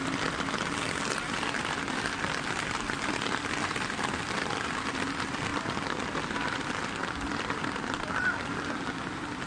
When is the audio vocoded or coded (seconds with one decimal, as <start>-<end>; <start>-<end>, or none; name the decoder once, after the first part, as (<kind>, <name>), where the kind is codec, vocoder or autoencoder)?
none